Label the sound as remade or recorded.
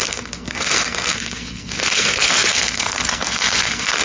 remade